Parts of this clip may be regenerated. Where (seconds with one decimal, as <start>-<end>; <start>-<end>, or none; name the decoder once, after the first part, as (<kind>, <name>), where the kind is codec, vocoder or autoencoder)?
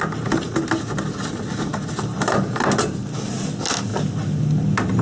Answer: none